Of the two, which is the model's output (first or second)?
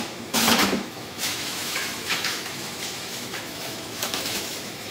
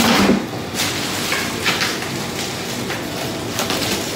first